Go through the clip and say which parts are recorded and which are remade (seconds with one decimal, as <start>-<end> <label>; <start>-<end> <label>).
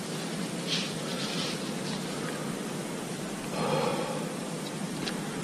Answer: 0.0-3.9 recorded; 3.9-5.4 remade